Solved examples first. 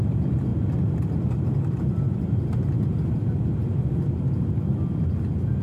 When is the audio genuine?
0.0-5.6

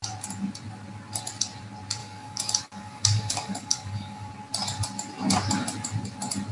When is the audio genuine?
0.0-2.0; 4.3-6.5